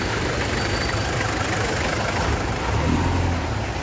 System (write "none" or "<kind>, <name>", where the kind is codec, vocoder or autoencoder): none